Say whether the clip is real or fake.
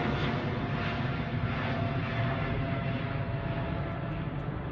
real